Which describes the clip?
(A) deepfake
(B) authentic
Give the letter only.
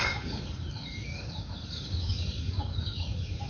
A